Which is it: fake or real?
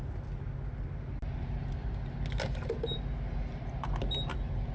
real